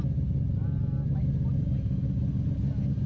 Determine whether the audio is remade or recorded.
recorded